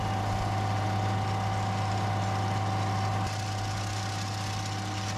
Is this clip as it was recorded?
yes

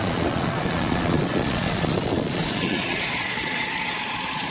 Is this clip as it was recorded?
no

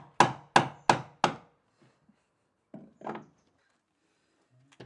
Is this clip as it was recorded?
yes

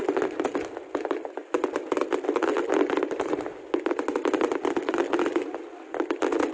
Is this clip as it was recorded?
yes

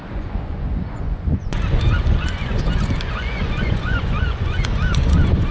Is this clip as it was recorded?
no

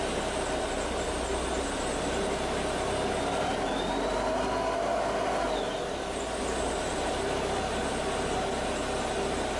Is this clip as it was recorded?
yes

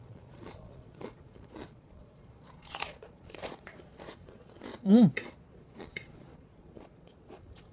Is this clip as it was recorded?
no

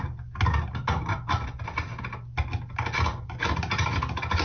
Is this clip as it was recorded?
yes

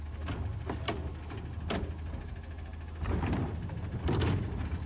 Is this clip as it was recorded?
yes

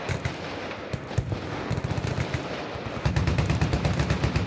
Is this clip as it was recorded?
yes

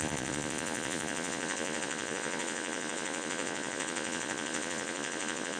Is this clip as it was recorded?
no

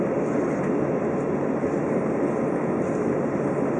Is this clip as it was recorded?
yes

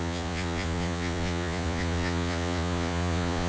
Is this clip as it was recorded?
no